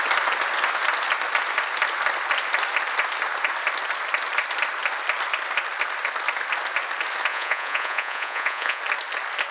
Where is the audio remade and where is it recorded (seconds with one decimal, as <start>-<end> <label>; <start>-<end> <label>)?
0.0-7.3 recorded; 7.3-8.8 remade; 8.8-9.5 recorded